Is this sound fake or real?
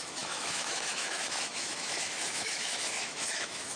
fake